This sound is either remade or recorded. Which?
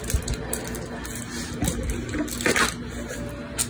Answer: recorded